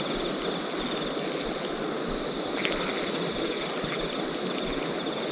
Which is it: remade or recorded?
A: recorded